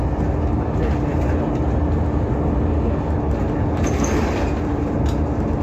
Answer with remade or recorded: recorded